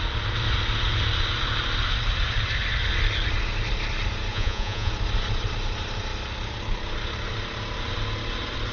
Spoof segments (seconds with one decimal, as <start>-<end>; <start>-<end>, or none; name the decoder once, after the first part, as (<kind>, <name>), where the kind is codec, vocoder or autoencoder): 4.3-4.9 (vocoder, Vocos)